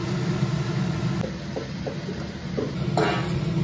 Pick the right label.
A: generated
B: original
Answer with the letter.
B